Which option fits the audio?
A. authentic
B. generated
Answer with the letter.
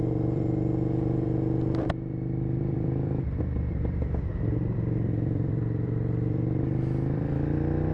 B